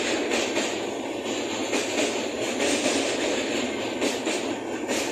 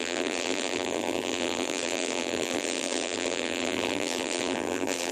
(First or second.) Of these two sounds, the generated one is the second